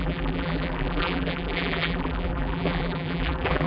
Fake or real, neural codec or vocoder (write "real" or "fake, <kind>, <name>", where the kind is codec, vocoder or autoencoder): fake, vocoder, BigVGAN v2